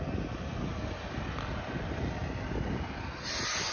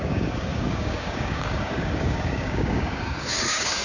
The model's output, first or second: second